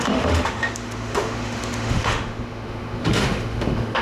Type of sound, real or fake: fake